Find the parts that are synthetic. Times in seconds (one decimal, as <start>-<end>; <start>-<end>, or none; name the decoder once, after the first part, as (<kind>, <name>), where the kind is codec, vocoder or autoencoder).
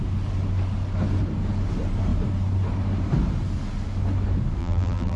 4.6-5.2 (vocoder, BigVGAN v2)